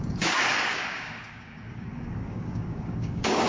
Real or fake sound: fake